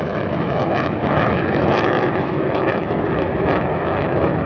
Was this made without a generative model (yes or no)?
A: no